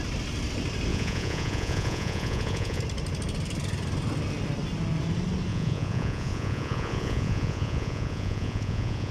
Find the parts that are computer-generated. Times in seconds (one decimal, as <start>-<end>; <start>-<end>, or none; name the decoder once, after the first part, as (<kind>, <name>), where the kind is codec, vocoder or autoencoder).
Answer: 0.9-2.8 (vocoder, Vocos); 5.5-9.1